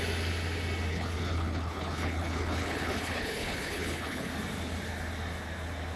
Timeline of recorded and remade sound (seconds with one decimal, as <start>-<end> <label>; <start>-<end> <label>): 0.0-0.9 recorded; 0.9-4.3 remade; 4.3-6.0 recorded